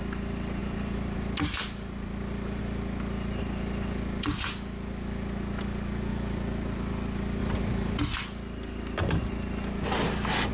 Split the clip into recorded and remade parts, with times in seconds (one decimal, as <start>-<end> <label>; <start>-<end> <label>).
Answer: 0.0-0.6 recorded; 0.6-2.6 remade; 2.6-6.1 recorded; 6.1-6.9 remade; 6.9-7.4 recorded; 7.4-8.0 remade; 8.0-10.5 recorded